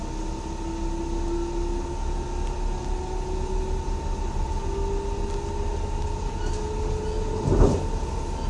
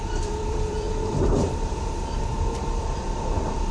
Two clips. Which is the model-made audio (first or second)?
second